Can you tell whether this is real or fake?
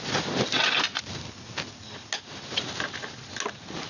real